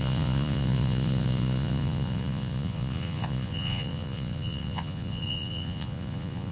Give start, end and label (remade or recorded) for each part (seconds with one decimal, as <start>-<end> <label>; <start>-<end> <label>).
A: 0.0-6.5 remade